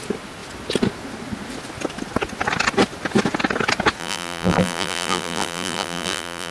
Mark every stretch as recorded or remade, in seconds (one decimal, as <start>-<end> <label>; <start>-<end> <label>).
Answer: 0.0-4.0 recorded; 4.0-6.5 remade